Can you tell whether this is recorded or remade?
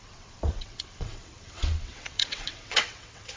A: remade